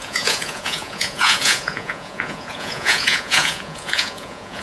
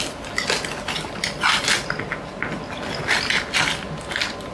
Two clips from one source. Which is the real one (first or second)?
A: second